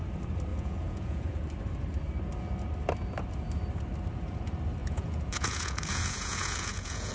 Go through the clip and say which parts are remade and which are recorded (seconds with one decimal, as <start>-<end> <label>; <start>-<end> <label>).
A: 0.0-0.5 recorded; 0.5-1.3 remade; 1.3-4.8 recorded; 4.8-7.1 remade

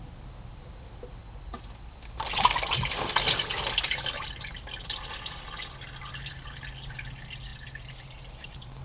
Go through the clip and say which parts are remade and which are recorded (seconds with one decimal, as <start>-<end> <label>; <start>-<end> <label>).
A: 0.0-8.8 recorded

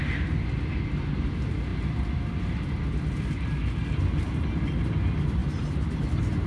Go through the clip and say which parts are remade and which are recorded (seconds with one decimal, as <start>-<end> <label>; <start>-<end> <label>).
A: 0.0-6.5 recorded

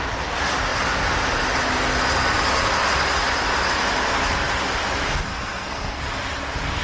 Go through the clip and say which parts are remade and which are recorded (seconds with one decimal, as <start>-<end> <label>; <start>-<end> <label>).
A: 0.0-5.3 recorded; 5.3-6.0 remade; 6.0-6.8 recorded